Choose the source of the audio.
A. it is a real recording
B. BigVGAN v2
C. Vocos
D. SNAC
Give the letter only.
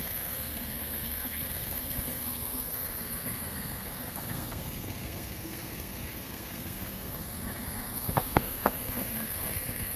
D